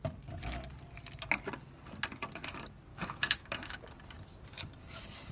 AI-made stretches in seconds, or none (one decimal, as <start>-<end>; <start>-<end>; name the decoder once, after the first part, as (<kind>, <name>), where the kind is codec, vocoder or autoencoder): 2.9-3.8 (autoencoder, DAC-VAE)